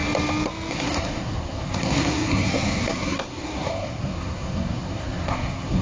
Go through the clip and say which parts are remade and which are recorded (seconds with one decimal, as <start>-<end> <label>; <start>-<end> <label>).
0.0-0.7 recorded; 0.7-5.8 remade